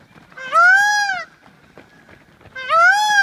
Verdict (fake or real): real